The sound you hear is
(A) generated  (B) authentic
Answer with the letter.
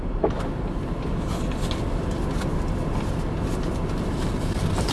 B